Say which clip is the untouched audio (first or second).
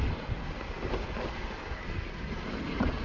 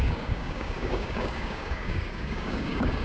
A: first